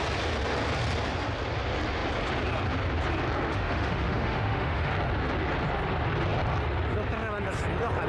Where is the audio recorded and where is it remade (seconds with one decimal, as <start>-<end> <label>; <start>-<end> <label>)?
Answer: 0.0-3.5 recorded; 3.5-4.9 remade; 4.9-8.1 recorded